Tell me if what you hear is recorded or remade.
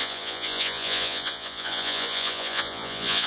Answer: remade